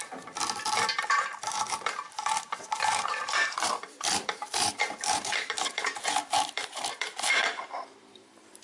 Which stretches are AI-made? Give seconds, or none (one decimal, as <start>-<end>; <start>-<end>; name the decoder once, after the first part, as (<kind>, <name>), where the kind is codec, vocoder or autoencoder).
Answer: 1.0-8.6 (vocoder, BigVGAN v2)